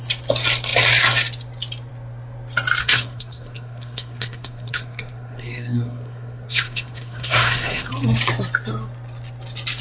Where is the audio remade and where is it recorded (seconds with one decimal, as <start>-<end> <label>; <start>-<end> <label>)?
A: 0.0-2.8 recorded; 2.8-7.9 remade; 7.9-9.8 recorded